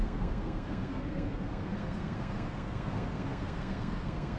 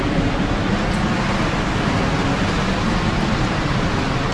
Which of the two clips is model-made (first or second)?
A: first